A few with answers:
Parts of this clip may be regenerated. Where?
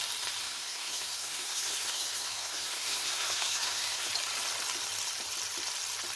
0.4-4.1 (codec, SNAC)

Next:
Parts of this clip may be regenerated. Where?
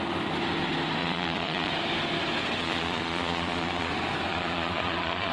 1.0-1.7 (vocoder, Vocos); 2.6-3.9; 4.3-5.3